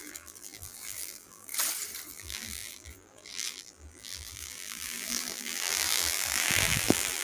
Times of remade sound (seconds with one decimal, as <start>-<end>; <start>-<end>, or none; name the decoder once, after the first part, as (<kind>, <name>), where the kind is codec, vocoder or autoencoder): 0.0-1.5 (vocoder, BigVGAN v2); 2.1-7.2